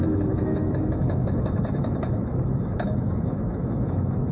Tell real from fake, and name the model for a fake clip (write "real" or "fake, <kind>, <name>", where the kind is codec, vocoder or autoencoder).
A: fake, autoencoder, DAC-VAE